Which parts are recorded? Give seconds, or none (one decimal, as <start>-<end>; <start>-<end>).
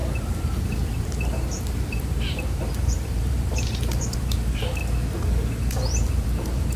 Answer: 4.8-5.7